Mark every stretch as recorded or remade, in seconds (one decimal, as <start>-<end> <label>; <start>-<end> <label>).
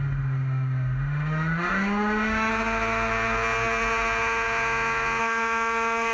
0.0-2.5 remade; 2.5-5.2 recorded; 5.2-6.1 remade